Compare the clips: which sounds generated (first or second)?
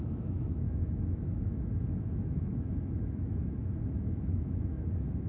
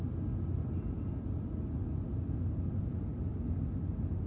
first